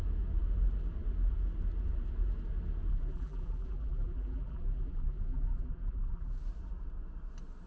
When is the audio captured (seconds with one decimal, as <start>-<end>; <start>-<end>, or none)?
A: 0.0-2.9; 6.4-7.7